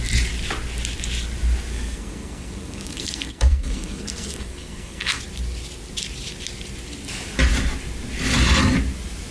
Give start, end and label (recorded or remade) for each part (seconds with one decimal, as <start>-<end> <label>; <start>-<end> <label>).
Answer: 0.0-1.7 recorded; 1.7-5.2 remade; 5.2-9.3 recorded